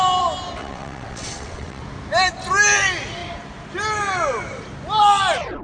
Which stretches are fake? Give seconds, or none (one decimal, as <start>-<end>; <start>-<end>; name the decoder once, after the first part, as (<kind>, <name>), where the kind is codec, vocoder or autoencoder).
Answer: 0.6-1.8 (vocoder, WaveNeXt)